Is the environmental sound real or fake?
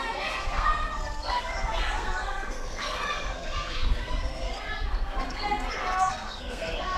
fake